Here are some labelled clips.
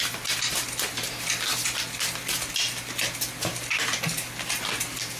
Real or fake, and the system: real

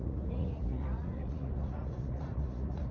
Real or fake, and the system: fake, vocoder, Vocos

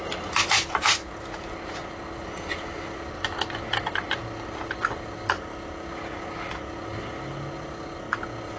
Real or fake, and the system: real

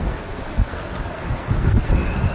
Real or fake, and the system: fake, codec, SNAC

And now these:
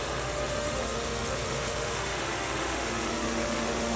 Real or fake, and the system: fake, autoencoder, DAC-VAE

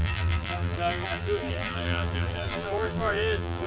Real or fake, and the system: fake, vocoder, BigVGAN v2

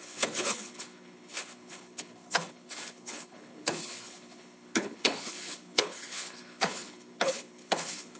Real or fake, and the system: fake, codec, HILCodec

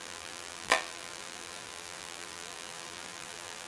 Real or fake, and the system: fake, vocoder, BigVGAN v2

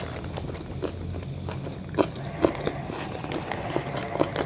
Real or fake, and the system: real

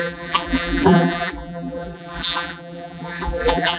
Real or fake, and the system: fake, vocoder, BigVGAN v2